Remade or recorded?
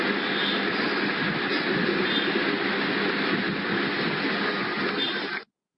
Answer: recorded